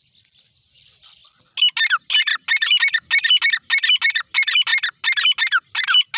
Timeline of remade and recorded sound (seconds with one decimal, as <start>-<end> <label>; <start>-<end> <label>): 0.0-6.2 recorded